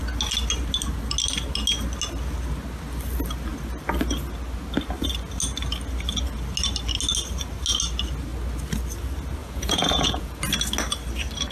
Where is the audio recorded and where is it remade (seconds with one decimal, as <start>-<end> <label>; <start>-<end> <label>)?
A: 0.0-9.4 recorded; 9.4-10.4 remade; 10.4-11.5 recorded